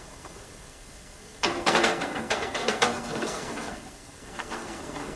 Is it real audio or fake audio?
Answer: fake